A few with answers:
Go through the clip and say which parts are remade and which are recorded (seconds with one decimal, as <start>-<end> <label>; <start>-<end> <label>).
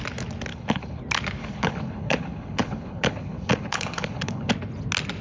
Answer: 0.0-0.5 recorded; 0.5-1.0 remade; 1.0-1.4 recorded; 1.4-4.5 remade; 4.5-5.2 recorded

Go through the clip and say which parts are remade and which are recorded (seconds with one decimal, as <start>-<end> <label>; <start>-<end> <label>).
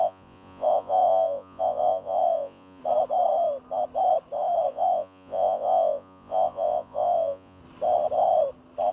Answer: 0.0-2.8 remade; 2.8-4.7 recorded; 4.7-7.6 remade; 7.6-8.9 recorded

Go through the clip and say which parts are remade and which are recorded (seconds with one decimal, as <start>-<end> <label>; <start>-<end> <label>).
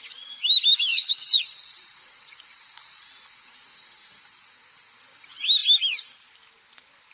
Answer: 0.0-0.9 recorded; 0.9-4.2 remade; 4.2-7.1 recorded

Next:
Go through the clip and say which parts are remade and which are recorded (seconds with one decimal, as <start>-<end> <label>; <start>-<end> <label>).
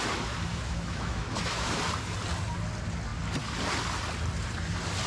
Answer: 0.0-0.5 recorded; 0.5-1.8 remade; 1.8-5.1 recorded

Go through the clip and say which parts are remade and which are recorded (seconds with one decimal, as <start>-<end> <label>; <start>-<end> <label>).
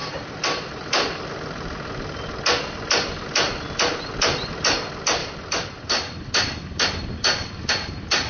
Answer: 0.0-1.3 remade; 1.3-5.2 recorded; 5.2-7.7 remade; 7.7-8.3 recorded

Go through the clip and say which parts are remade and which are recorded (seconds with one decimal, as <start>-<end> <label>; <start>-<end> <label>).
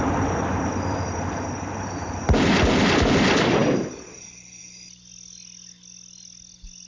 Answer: 0.0-6.9 recorded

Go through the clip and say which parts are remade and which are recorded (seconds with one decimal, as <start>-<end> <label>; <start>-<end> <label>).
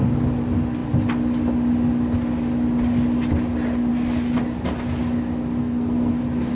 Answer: 0.0-5.6 recorded; 5.6-6.1 remade; 6.1-6.5 recorded